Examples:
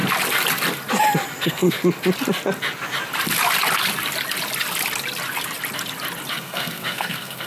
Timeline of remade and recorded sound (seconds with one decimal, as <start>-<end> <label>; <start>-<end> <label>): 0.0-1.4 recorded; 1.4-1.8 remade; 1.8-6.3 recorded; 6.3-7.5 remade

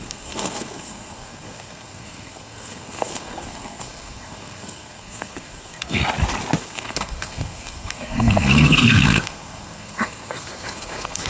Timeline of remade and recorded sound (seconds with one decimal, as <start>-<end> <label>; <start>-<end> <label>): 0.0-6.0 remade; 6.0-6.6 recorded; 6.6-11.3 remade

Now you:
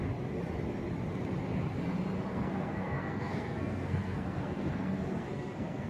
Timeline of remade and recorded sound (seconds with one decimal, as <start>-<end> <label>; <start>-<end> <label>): 0.0-2.3 recorded; 2.3-5.9 remade

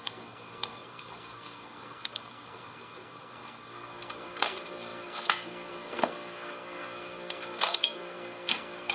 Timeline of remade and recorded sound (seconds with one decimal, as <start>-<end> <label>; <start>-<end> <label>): 0.0-8.9 remade

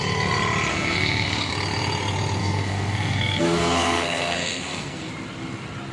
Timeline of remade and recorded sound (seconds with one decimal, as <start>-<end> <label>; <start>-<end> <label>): 0.0-0.7 recorded; 0.7-1.5 remade; 1.5-2.4 recorded; 2.4-5.1 remade; 5.1-5.9 recorded

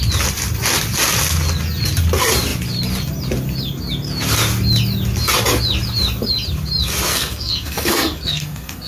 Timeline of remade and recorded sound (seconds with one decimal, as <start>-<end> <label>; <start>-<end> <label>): 0.0-7.1 recorded; 7.1-8.9 remade